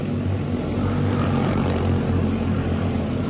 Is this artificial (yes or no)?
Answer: no